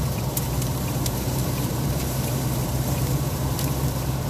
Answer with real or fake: fake